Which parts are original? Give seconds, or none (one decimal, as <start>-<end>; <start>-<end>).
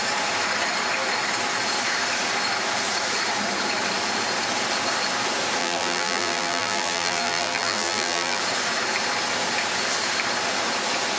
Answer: 0.0-5.6; 8.4-11.2